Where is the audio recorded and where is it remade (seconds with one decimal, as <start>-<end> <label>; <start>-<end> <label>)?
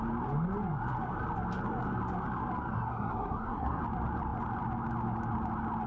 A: 0.0-2.7 recorded; 2.7-3.8 remade; 3.8-5.9 recorded